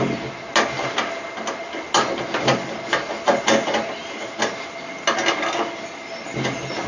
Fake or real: real